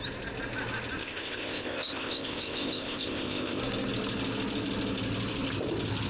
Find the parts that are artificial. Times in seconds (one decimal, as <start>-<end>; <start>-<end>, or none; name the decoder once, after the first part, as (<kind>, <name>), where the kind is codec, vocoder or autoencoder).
1.0-3.6 (codec, ZipCodec)